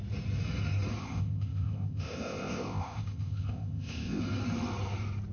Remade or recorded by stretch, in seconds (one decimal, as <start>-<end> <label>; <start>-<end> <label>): 0.0-1.0 recorded; 1.0-4.2 remade; 4.2-5.3 recorded